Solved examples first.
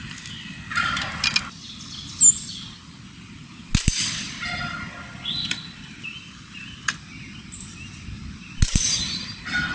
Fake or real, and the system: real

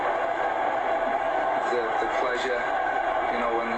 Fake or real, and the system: real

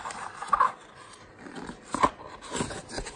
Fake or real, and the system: real